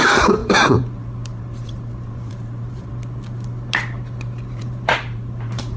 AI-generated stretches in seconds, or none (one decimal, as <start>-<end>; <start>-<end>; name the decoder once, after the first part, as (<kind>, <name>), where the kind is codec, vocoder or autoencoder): 0.0-2.9 (vocoder, BigVGAN v2); 4.6-5.8